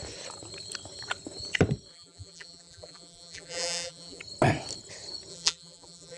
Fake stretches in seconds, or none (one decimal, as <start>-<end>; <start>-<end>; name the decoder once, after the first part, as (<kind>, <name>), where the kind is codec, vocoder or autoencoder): 1.9-4.2 (vocoder, BigVGAN v2); 5.3-6.2